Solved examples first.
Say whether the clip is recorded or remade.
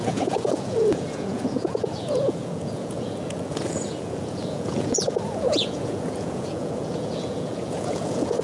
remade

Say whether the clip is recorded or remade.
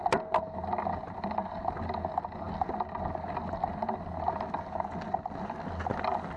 recorded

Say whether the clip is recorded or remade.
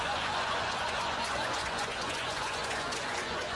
remade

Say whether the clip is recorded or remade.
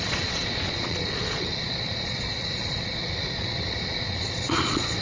remade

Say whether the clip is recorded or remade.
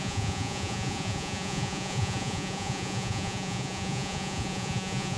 remade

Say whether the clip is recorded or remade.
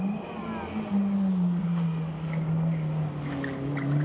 recorded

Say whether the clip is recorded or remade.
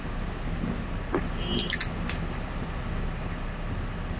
recorded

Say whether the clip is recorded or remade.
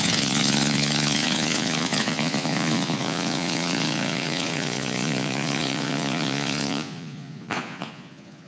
remade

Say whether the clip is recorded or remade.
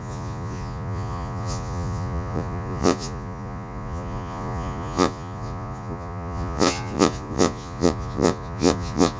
remade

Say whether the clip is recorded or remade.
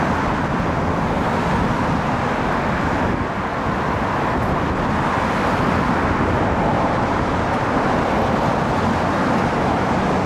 recorded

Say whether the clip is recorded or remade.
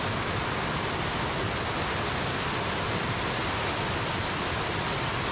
recorded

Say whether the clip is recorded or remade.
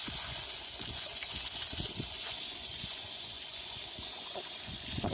remade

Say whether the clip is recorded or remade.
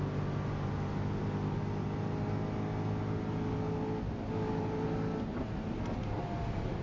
recorded